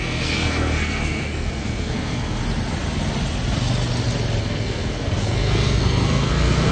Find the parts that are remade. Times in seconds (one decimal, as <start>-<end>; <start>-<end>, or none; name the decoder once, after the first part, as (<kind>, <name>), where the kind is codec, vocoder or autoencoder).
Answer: 0.0-2.4 (codec, SNAC); 4.4-6.7